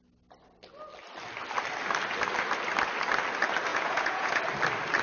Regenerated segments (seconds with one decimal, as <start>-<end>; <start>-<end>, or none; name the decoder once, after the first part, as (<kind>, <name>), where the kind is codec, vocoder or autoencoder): 3.7-4.4 (vocoder, Vocos)